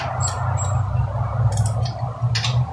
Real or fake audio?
real